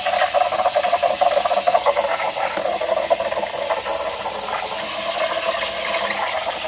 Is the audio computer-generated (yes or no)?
no